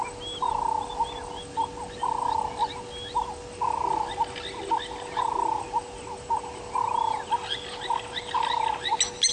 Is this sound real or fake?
real